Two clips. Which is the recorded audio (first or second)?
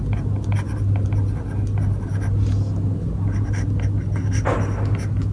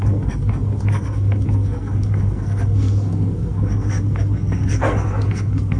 first